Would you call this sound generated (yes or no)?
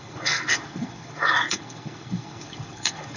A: yes